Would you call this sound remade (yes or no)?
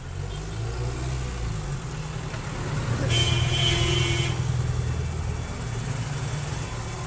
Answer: no